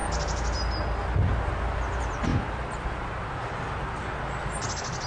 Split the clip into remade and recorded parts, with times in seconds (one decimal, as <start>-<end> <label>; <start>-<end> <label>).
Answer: 0.0-5.1 recorded